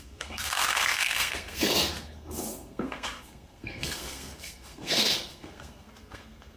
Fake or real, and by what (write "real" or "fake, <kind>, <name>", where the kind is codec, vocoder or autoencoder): fake, codec, SNAC